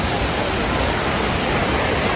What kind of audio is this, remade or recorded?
recorded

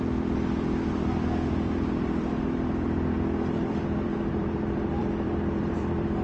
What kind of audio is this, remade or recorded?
remade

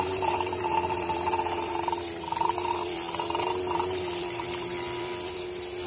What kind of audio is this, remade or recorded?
remade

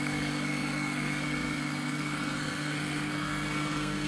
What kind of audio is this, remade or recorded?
remade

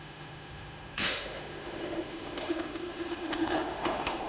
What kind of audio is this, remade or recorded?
remade